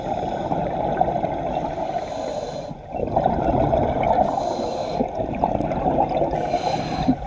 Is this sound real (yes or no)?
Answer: yes